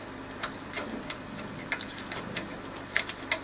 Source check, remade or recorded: recorded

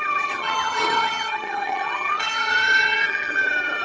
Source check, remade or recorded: remade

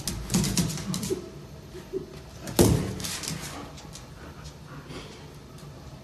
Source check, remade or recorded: recorded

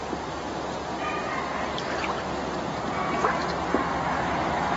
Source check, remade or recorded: recorded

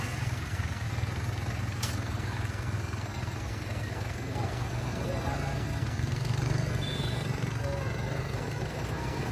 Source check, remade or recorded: remade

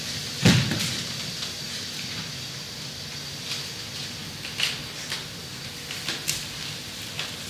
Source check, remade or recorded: recorded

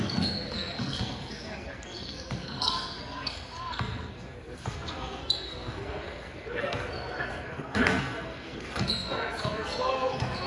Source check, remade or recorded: remade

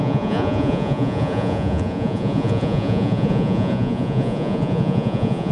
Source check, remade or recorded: remade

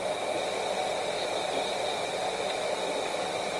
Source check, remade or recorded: recorded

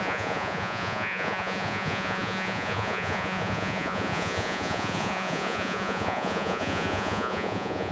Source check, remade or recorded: remade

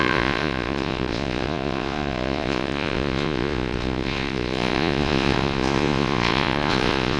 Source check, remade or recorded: remade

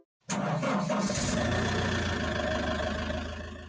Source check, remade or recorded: recorded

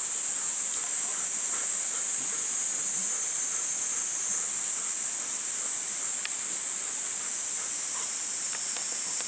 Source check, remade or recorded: recorded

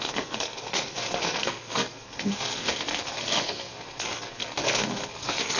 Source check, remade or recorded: remade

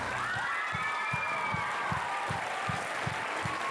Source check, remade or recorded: recorded